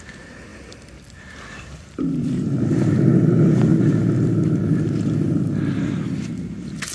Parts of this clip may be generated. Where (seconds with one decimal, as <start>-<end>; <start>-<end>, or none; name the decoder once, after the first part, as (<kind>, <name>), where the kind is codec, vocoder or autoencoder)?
0.5-3.1 (vocoder, BigVGAN v2); 3.7-5.8